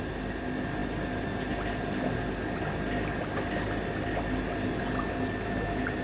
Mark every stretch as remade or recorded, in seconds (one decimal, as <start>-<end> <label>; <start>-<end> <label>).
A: 0.0-6.0 recorded